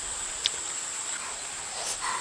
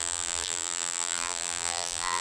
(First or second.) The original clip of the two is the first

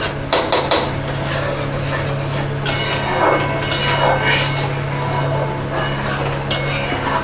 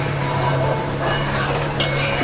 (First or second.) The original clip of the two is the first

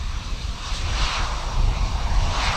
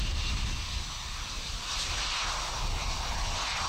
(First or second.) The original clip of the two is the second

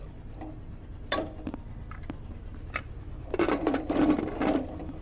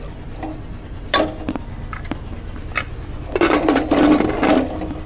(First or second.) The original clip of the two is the second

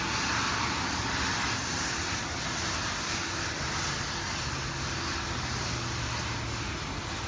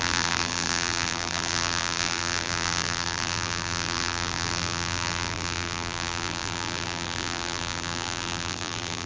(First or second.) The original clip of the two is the first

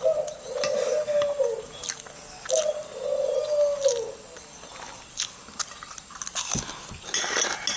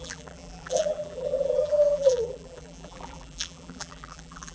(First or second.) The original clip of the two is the first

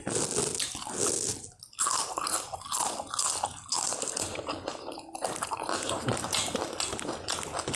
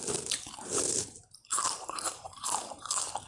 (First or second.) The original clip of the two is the first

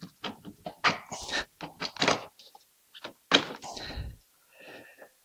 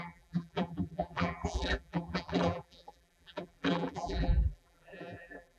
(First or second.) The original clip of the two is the first